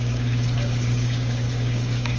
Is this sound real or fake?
fake